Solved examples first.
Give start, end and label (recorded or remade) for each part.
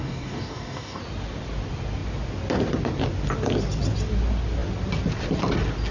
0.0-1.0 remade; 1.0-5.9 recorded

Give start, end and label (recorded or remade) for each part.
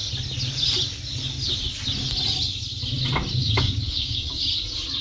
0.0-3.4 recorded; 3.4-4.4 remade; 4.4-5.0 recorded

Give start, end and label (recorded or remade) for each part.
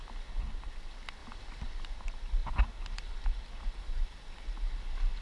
0.0-5.2 recorded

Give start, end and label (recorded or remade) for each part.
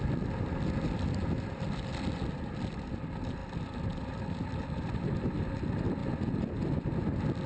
0.0-7.5 recorded